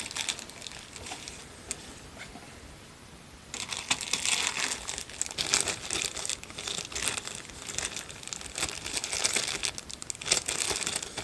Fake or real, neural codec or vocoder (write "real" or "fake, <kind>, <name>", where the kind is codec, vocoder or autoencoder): real